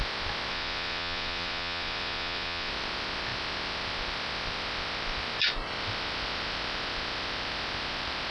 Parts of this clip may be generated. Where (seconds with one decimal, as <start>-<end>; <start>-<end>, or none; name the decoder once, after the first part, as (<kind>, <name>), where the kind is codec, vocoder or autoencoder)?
0.5-2.7 (vocoder, Vocos)